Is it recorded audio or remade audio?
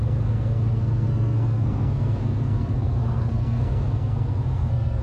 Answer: remade